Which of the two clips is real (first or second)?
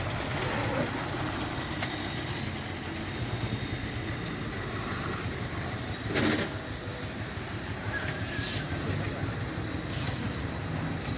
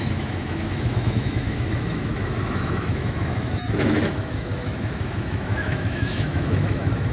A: first